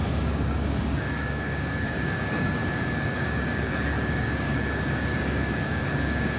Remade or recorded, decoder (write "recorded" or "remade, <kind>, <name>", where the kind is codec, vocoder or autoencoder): remade, codec, DAC